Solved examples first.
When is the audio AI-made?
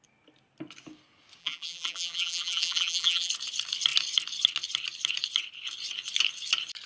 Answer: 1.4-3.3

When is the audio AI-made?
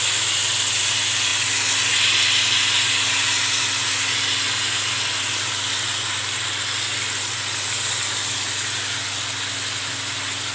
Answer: none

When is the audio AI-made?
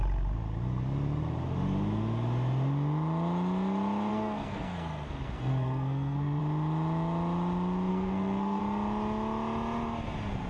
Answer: 4.1-6.4; 7.9-8.6